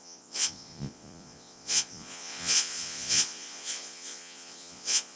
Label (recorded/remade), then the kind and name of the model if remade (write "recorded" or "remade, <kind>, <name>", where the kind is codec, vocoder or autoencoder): remade, vocoder, Vocos